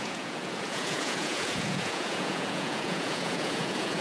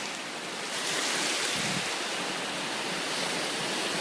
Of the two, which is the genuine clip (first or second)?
second